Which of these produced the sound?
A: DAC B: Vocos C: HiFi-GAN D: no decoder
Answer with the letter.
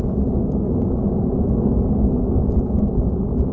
D